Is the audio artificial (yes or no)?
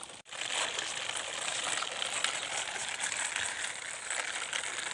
no